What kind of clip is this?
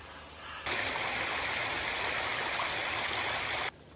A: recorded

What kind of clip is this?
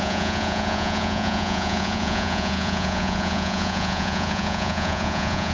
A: remade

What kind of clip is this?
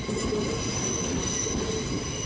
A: recorded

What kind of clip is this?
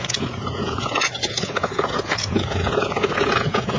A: remade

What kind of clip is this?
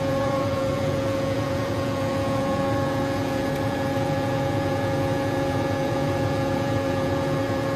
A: remade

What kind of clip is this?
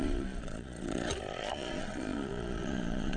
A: remade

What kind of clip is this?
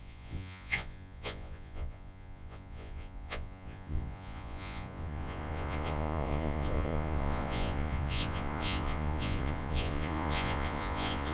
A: remade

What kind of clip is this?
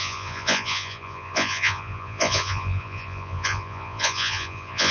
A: remade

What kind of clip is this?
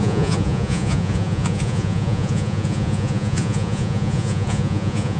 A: remade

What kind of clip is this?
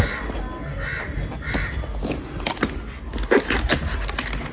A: recorded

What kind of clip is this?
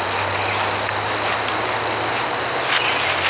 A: recorded